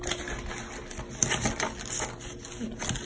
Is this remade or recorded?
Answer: recorded